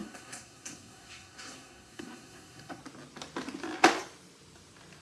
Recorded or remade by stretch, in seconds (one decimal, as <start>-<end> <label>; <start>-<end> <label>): 0.0-2.8 remade; 2.8-5.0 recorded